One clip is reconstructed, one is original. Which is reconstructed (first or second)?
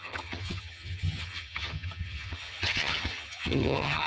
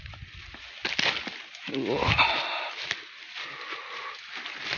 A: first